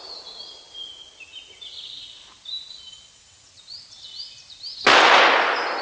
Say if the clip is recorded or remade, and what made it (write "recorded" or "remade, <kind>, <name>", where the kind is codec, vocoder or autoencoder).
recorded